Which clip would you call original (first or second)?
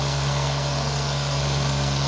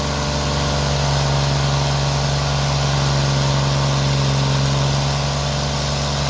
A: second